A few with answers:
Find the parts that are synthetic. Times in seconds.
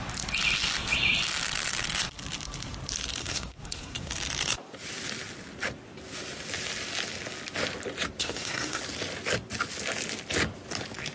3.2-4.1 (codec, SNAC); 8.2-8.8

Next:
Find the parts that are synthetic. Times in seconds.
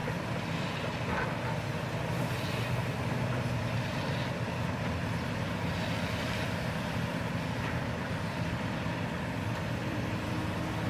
0.0-0.7 (vocoder, BigVGAN v2); 5.6-7.1; 9.8-10.3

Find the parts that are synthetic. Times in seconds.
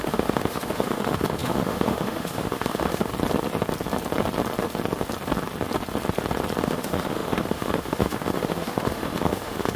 0.0-3.1 (autoencoder, DAC-VAE); 6.6-9.8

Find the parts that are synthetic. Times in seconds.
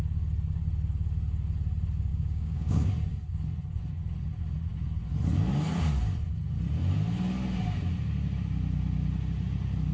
2.1-2.9 (codec, DAC)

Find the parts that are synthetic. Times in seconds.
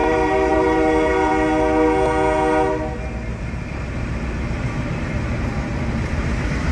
0.0-1.3 (vocoder, BigVGAN v2); 3.7-6.7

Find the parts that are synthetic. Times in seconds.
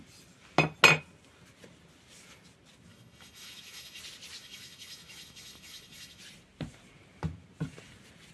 2.9-4.0 (autoencoder, DAC-VAE); 4.4-6.2